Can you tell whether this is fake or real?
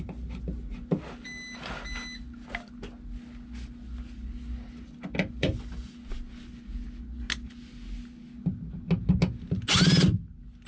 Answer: real